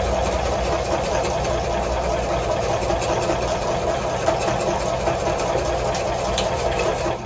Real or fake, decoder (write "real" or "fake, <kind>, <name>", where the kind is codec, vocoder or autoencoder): real